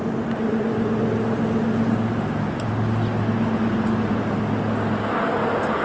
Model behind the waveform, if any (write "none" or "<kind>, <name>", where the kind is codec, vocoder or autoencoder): none